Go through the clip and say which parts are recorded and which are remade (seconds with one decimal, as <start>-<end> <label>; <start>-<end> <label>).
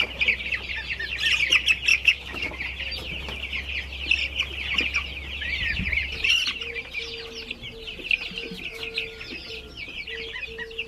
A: 0.0-1.9 recorded; 1.9-2.5 remade; 2.5-10.9 recorded